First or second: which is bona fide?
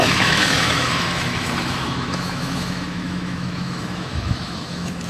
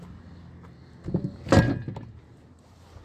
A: second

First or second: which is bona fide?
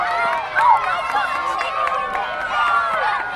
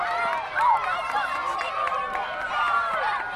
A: first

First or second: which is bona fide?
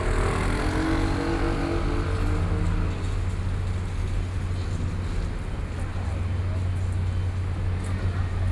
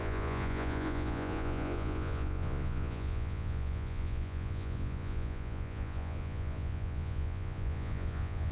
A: first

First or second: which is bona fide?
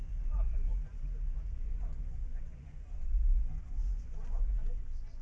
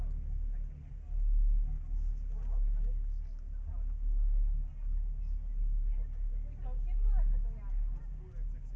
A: second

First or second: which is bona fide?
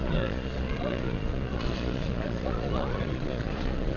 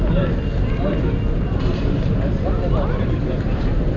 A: second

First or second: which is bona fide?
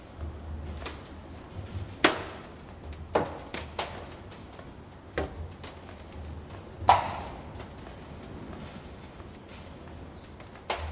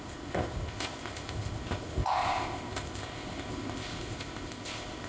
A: first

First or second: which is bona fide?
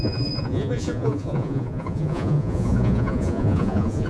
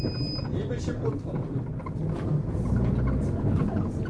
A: second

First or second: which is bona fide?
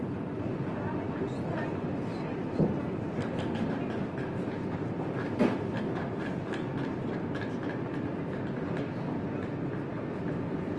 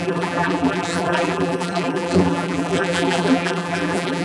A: first